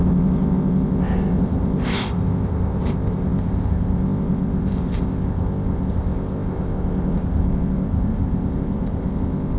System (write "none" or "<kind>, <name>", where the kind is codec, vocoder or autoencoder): codec, ZipCodec